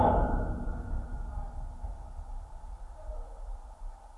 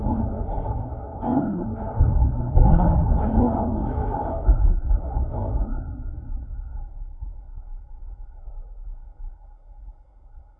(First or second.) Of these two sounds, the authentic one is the first